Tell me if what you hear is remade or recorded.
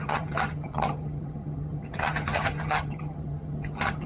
remade